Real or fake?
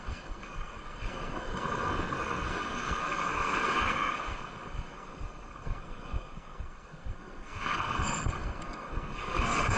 fake